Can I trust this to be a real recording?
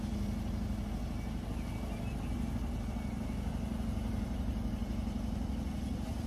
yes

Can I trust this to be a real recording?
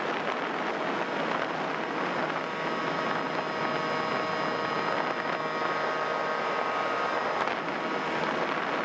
yes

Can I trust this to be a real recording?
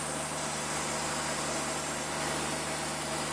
yes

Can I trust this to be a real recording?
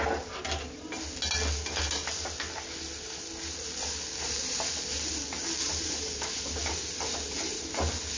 yes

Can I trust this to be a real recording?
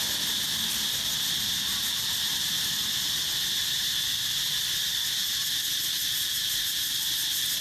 yes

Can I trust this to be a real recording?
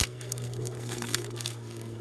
no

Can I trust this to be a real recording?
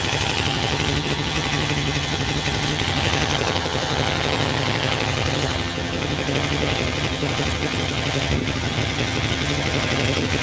no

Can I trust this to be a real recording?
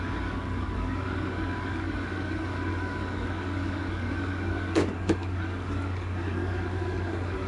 no